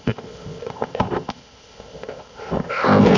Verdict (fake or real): fake